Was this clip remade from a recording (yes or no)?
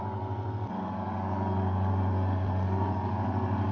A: no